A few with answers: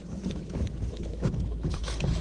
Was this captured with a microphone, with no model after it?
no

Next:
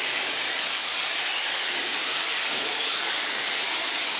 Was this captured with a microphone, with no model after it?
no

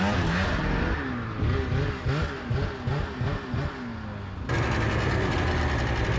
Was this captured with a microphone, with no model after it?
yes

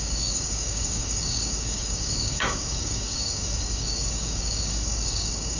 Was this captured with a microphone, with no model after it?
no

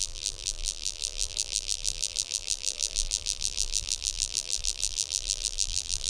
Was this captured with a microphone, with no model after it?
no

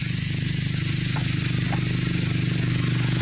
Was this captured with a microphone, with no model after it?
yes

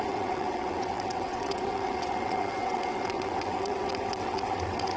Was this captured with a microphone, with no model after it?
no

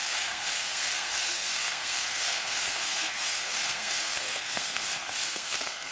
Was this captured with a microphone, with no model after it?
no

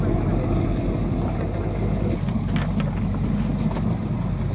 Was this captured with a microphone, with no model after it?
yes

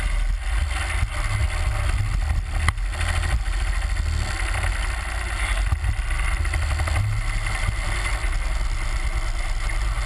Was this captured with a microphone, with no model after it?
yes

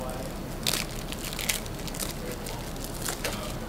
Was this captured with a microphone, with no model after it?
yes